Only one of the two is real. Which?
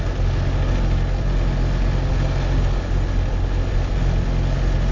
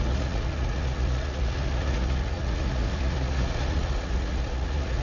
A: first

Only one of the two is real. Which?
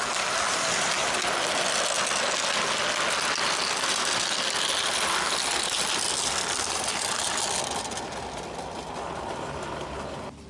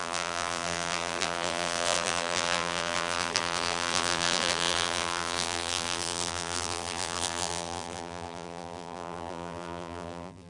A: first